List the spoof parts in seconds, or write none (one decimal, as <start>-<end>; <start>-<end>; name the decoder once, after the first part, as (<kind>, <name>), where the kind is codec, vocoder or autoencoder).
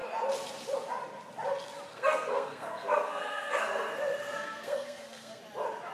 1.9-5.4 (codec, SNAC)